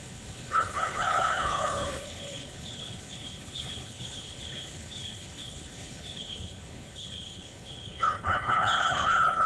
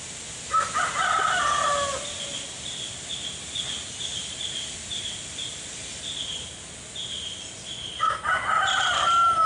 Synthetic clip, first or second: first